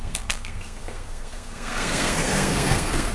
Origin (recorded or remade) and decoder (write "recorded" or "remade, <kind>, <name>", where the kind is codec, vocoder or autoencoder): remade, codec, SNAC